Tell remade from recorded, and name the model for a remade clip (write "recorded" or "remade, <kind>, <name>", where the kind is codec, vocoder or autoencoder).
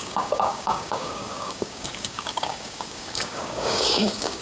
remade, codec, DAC